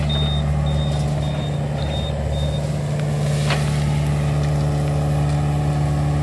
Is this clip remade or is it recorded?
recorded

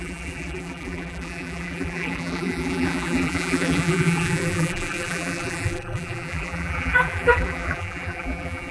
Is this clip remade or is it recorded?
remade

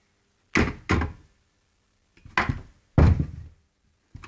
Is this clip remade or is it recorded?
recorded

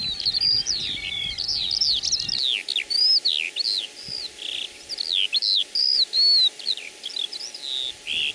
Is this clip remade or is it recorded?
recorded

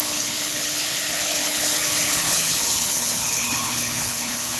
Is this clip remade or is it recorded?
remade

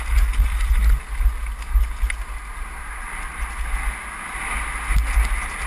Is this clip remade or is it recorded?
recorded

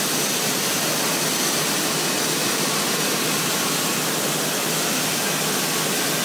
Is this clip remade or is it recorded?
remade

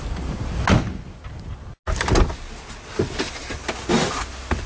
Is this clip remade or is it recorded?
recorded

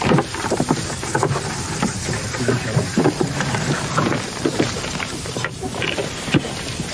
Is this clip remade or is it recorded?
remade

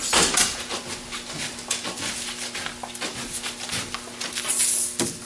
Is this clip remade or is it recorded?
recorded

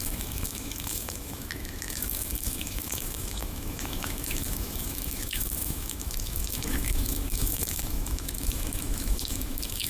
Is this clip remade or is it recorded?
remade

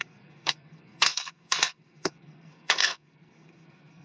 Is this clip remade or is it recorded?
remade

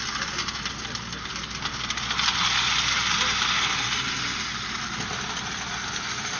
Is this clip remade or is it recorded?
recorded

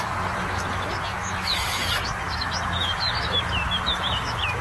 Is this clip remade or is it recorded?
remade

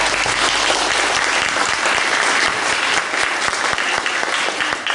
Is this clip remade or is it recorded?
recorded